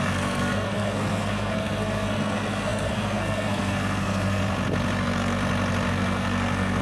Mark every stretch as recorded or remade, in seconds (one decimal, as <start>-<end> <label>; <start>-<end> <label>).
0.0-4.4 remade; 4.4-5.0 recorded; 5.0-5.4 remade; 5.4-5.9 recorded; 5.9-6.8 remade